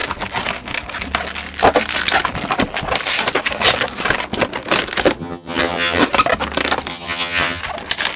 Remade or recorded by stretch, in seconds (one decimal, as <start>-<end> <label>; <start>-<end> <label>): 0.0-5.2 recorded; 5.2-6.0 remade; 6.0-6.9 recorded; 6.9-7.6 remade; 7.6-8.2 recorded

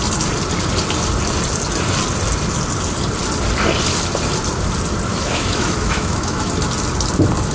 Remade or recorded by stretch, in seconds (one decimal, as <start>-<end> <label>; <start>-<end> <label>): 0.0-5.1 recorded; 5.1-6.5 remade; 6.5-7.5 recorded

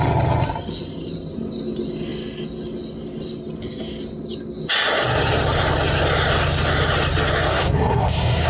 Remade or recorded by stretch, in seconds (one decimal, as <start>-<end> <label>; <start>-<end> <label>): 0.0-7.5 recorded; 7.5-8.5 remade

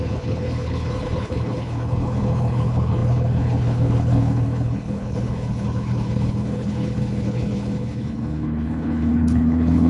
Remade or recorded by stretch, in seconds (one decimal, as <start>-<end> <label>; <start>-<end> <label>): 0.0-9.9 remade